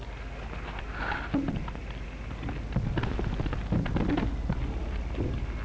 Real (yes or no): yes